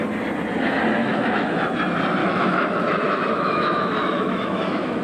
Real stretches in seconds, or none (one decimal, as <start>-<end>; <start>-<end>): 0.0-1.0; 1.6-2.2